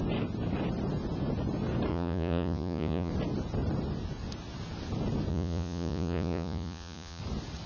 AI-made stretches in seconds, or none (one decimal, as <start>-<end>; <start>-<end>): 1.9-3.1; 5.3-7.2